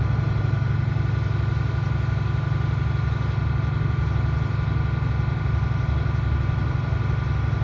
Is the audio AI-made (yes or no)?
no